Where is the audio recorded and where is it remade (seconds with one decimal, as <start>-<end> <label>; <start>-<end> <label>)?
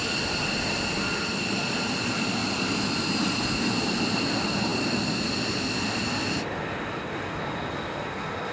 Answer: 0.0-8.5 recorded